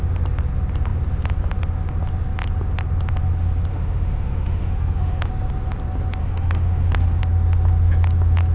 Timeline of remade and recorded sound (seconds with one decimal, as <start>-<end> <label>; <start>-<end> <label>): 0.0-3.7 recorded; 3.7-5.3 remade; 5.3-6.2 recorded; 6.2-7.2 remade; 7.2-8.5 recorded